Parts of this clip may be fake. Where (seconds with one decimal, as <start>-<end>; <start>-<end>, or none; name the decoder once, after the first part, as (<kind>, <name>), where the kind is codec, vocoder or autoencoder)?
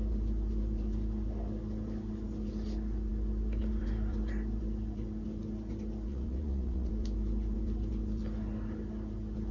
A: 6.1-6.9 (vocoder, Vocos)